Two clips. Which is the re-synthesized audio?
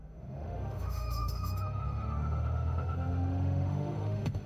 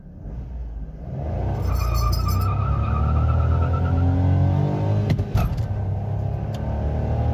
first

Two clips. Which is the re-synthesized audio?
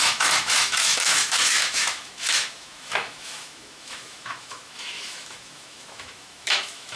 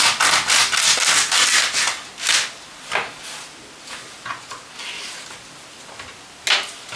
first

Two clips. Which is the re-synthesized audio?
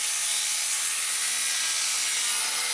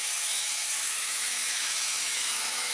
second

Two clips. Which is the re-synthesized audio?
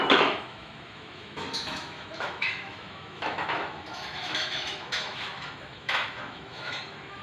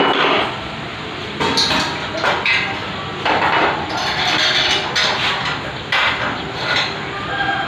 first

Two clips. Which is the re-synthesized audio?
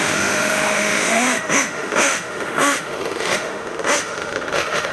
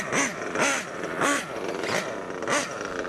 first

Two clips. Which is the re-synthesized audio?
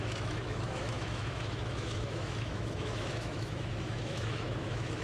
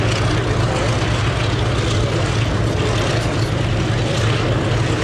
first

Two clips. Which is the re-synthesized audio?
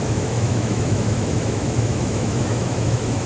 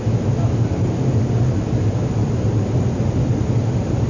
first